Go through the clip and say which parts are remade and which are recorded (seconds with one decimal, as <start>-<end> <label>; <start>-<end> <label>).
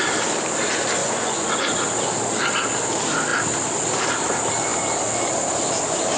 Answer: 0.0-1.0 recorded; 1.0-1.5 remade; 1.5-6.2 recorded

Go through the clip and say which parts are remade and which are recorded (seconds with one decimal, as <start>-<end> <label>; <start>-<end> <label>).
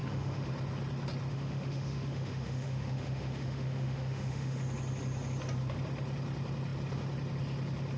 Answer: 0.0-0.5 remade; 0.5-1.3 recorded; 1.3-4.6 remade; 4.6-8.0 recorded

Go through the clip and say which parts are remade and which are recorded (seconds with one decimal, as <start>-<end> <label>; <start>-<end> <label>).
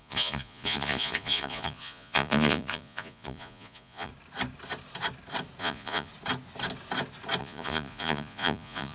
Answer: 0.0-4.1 remade; 4.1-5.6 recorded; 5.6-6.1 remade; 6.1-7.4 recorded; 7.4-8.9 remade